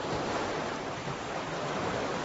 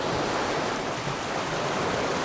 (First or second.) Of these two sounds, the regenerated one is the first